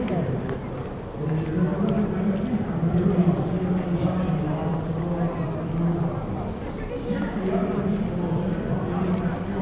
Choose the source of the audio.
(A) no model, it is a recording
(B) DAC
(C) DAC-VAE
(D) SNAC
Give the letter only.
A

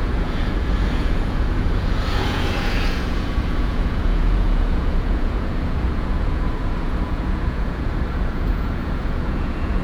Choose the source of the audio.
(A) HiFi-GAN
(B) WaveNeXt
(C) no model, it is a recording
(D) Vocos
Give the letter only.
D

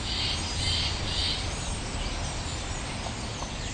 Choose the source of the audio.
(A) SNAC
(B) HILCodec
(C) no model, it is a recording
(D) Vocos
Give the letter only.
C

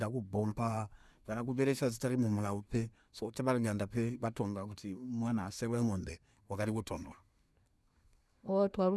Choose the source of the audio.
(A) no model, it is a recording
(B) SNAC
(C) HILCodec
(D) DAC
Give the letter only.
B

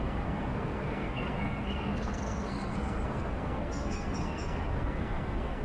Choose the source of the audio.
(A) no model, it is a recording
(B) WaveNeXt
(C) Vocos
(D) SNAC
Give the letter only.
D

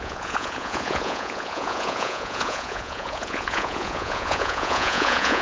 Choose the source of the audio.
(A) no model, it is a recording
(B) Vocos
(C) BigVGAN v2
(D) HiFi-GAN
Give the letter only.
B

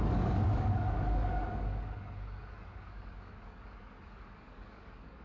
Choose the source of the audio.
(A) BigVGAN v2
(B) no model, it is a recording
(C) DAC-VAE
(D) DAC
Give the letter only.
D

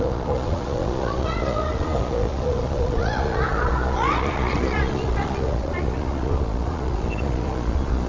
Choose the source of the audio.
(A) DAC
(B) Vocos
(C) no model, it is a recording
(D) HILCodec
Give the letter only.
B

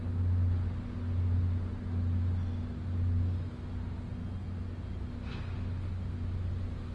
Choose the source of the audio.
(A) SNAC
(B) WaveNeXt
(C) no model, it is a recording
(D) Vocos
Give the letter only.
C